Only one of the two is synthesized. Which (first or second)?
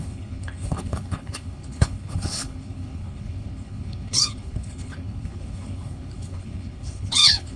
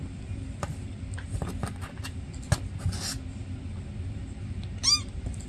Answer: first